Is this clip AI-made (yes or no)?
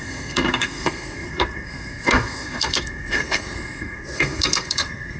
yes